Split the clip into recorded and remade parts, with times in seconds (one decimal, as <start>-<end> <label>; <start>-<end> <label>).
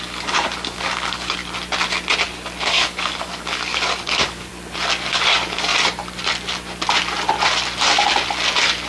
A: 0.0-1.4 remade; 1.4-2.6 recorded; 2.6-4.5 remade; 4.5-5.1 recorded; 5.1-5.7 remade; 5.7-8.9 recorded